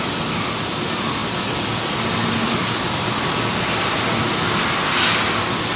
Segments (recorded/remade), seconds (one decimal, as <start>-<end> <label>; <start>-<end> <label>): 0.0-5.8 recorded

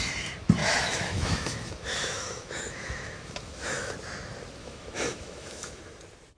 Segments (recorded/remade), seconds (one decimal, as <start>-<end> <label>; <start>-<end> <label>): 0.0-0.6 recorded; 0.6-3.9 remade; 3.9-4.6 recorded; 4.6-5.8 remade; 5.8-6.4 recorded

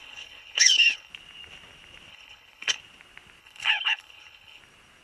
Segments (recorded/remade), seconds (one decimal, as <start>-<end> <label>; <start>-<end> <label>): 0.0-1.1 remade; 1.1-2.1 recorded; 2.1-2.8 remade; 2.8-3.4 recorded; 3.4-4.6 remade; 4.6-5.0 recorded

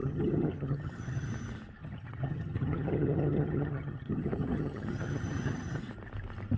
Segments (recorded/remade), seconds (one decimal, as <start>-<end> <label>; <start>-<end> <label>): 0.0-1.3 remade; 1.3-1.8 recorded; 1.8-5.8 remade; 5.8-6.6 recorded

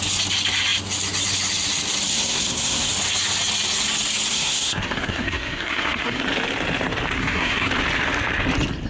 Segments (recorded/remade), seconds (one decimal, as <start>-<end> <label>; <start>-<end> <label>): 0.0-2.1 recorded; 2.1-2.9 remade; 2.9-4.3 recorded; 4.3-6.2 remade; 6.2-7.2 recorded; 7.2-7.7 remade; 7.7-8.9 recorded